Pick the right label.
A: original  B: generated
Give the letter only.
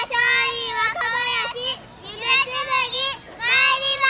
A